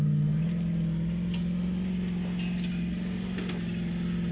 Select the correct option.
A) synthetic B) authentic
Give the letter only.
B